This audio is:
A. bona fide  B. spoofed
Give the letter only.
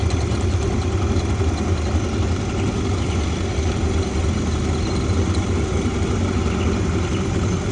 A